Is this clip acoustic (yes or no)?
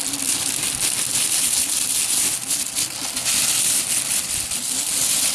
yes